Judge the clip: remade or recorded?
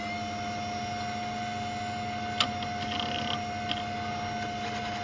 recorded